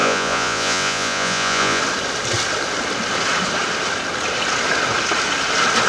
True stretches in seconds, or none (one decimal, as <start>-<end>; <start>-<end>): 1.8-5.9